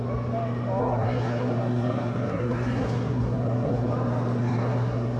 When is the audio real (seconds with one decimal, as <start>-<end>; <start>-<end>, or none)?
0.0-0.8; 3.9-4.4